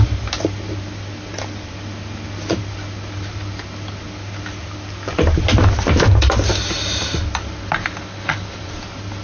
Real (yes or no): yes